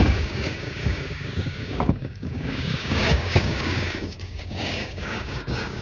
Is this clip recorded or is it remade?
remade